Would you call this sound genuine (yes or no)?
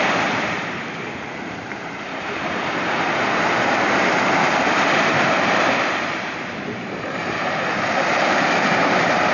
no